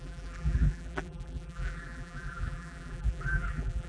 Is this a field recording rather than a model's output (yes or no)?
no